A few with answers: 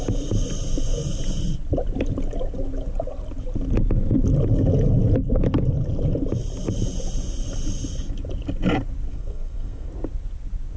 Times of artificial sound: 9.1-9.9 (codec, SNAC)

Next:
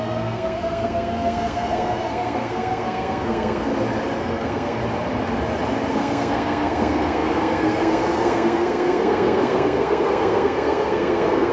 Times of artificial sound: 0.0-3.7 (codec, SNAC); 4.2-4.8; 5.9-11.5